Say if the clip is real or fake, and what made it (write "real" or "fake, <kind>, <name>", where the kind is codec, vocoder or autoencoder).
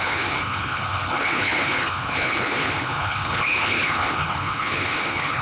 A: fake, codec, HILCodec